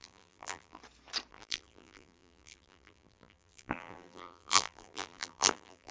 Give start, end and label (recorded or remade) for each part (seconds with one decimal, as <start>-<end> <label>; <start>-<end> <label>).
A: 0.0-0.8 remade; 0.8-1.3 recorded; 1.3-5.9 remade